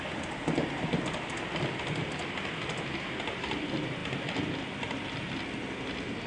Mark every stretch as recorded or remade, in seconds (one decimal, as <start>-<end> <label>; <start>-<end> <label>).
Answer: 0.0-6.3 recorded